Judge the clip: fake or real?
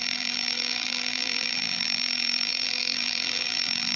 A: fake